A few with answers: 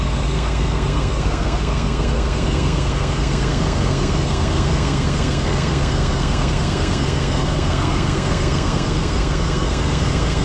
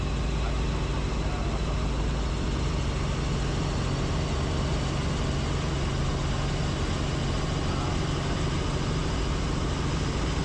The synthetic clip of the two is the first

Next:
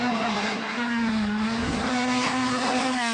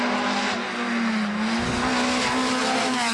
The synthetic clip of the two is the first